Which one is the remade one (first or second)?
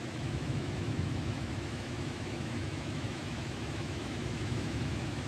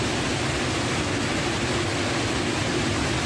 first